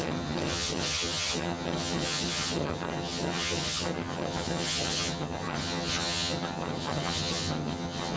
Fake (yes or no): yes